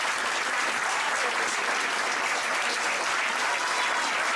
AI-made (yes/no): yes